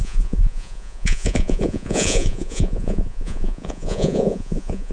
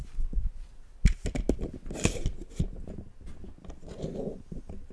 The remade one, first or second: first